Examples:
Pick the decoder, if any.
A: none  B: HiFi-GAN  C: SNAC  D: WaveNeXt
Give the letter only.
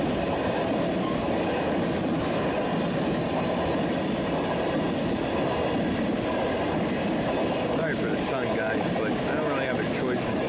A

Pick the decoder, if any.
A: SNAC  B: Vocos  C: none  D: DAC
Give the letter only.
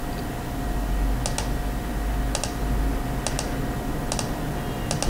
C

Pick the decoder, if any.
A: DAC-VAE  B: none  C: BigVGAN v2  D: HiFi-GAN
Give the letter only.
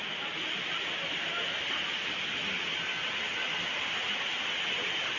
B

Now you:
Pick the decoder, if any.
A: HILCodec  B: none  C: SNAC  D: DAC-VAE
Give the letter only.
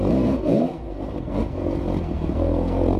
C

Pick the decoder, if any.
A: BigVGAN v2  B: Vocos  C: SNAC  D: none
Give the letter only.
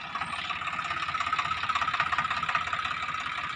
D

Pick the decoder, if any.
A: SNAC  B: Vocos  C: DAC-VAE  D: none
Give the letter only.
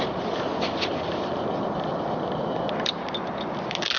D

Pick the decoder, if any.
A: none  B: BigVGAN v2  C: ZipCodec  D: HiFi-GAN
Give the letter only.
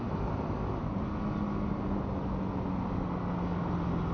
A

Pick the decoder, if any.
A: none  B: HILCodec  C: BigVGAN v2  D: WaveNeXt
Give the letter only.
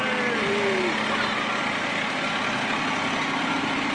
A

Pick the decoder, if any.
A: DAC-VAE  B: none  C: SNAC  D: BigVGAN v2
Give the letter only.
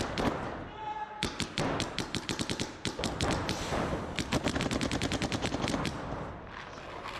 B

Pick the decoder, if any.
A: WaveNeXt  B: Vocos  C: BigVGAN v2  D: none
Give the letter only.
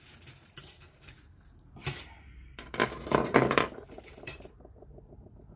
C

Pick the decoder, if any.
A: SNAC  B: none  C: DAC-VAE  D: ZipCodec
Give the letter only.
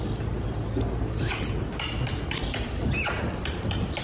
B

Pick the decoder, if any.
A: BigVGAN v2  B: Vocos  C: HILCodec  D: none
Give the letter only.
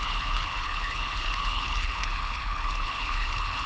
C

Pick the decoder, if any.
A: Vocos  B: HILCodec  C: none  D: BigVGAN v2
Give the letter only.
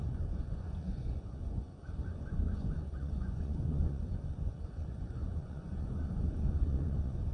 A